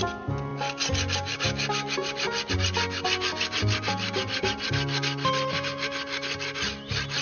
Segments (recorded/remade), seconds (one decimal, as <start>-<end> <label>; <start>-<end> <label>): 0.0-7.2 recorded